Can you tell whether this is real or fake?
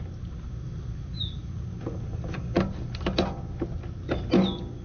real